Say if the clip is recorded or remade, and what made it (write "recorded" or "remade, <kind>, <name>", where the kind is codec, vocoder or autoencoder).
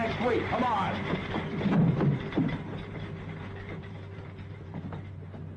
remade, vocoder, BigVGAN v2